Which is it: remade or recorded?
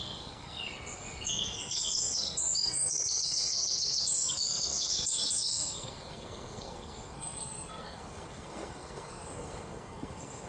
remade